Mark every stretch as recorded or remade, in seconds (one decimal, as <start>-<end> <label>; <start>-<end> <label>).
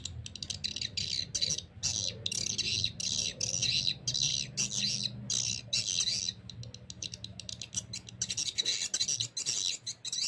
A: 0.0-10.3 recorded